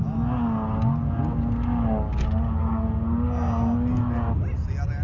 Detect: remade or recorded recorded